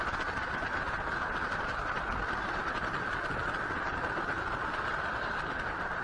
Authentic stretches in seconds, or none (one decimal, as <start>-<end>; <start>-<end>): 0.0-6.0

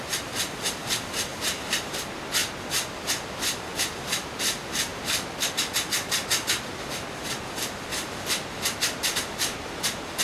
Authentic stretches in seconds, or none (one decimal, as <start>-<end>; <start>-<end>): 0.0-1.3; 1.9-7.9